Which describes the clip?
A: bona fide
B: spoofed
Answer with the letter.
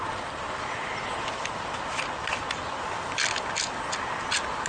A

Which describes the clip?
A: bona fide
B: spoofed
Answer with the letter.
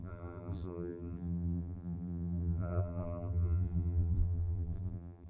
B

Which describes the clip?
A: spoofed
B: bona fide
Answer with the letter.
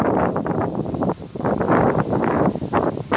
A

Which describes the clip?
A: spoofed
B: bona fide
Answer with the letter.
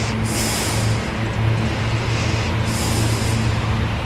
B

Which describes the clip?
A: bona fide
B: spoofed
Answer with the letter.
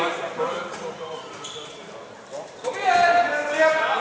B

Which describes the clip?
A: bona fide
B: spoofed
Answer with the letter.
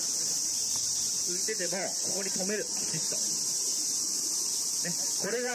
B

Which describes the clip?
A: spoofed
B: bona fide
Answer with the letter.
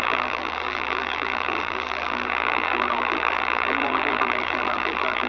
A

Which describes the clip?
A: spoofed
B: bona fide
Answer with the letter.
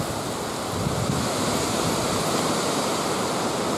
B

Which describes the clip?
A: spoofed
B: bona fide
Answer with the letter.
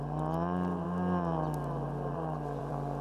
B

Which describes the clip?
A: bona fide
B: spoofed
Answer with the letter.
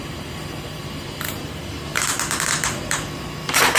B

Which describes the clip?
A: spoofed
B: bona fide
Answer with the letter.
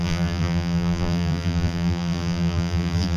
A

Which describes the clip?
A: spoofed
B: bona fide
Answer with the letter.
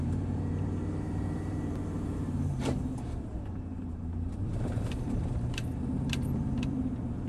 A